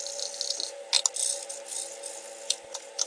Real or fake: real